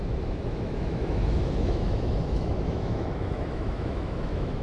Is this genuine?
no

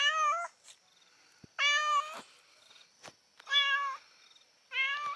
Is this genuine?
yes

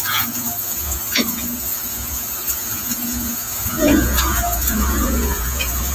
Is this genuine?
no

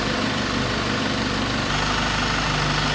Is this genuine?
yes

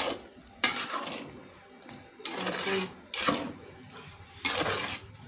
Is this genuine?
yes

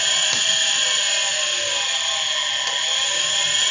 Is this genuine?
yes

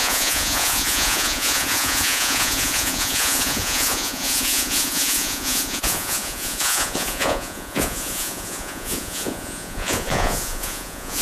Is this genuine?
no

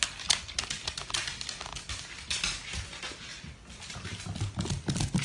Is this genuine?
yes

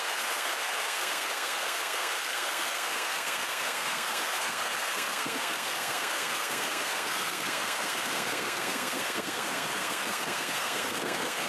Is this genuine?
no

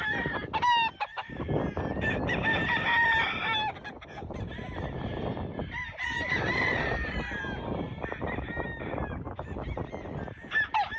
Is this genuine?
yes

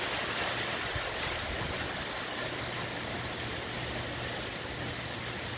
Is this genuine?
yes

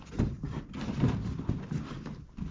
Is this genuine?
yes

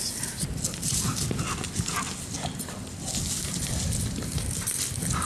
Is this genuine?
yes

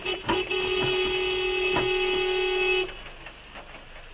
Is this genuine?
yes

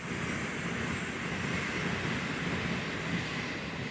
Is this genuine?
yes